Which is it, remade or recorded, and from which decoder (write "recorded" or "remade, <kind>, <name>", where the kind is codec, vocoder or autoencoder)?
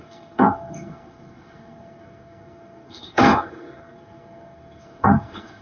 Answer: remade, codec, SNAC